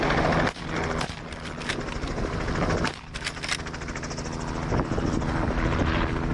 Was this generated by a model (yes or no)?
no